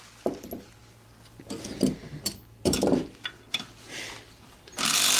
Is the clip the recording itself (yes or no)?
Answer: yes